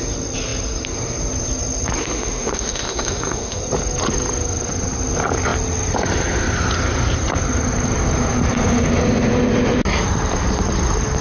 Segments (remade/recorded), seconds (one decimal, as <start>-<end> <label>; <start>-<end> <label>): 0.0-2.0 recorded; 2.0-3.6 remade; 3.6-11.2 recorded